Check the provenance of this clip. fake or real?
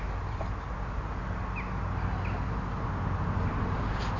real